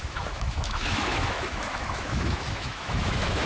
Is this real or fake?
fake